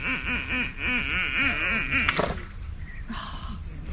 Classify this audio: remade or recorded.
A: recorded